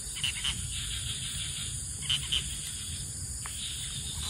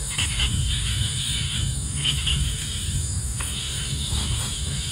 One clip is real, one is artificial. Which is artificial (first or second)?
second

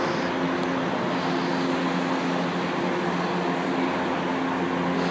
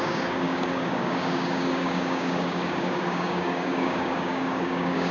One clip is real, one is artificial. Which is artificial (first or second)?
second